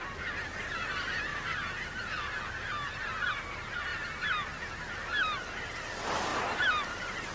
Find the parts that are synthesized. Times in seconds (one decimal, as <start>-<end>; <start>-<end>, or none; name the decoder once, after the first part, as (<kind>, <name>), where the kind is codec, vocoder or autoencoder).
none